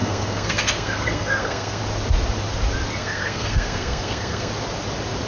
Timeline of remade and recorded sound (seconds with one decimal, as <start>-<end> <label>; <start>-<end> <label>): 0.0-1.8 remade; 1.8-3.0 recorded; 3.0-4.5 remade; 4.5-5.3 recorded